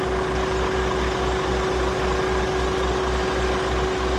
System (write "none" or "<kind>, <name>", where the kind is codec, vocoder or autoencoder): none